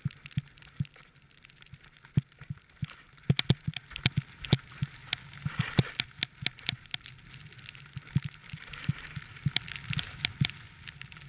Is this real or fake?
real